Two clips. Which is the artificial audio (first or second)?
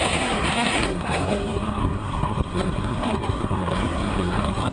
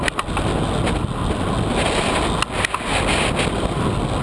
first